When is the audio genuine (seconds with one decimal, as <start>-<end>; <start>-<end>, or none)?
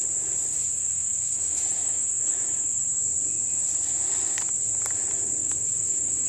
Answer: 0.0-0.5; 3.0-5.4